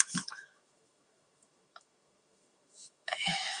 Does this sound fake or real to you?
fake